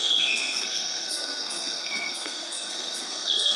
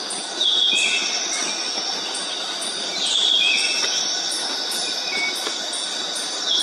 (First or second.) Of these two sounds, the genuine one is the second